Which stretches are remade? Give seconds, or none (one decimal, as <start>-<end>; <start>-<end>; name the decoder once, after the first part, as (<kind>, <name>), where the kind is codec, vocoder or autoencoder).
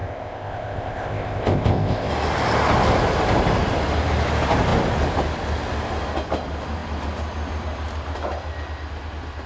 0.0-2.1 (codec, ZipCodec)